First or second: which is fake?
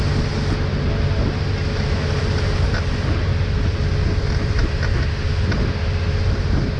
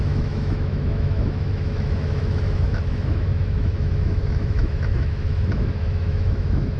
second